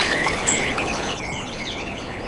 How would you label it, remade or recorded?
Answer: remade